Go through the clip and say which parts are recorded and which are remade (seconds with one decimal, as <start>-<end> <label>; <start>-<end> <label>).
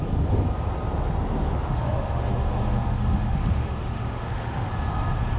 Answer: 0.0-1.7 recorded; 1.7-4.7 remade; 4.7-5.4 recorded